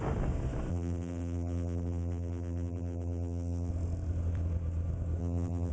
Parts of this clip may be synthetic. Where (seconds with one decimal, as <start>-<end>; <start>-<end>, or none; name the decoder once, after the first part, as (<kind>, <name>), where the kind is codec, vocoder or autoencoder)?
0.7-3.7 (vocoder, BigVGAN v2); 5.2-5.7